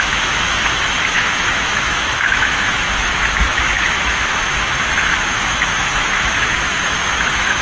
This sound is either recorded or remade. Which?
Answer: remade